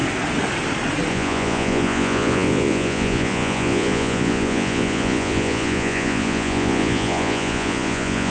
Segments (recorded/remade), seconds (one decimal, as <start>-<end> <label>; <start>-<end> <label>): 0.0-1.1 recorded; 1.1-8.3 remade